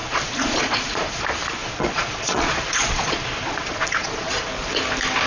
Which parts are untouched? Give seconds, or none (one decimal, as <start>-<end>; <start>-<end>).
1.2-1.6; 4.5-5.3